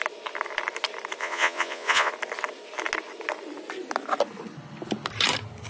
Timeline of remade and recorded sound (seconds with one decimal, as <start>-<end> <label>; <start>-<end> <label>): 0.0-1.2 recorded; 1.2-2.1 remade; 2.1-5.7 recorded